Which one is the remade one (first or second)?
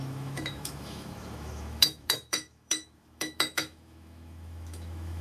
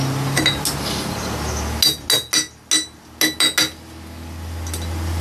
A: first